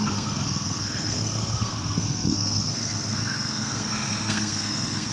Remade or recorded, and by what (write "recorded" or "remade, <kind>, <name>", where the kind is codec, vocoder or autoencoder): remade, codec, SNAC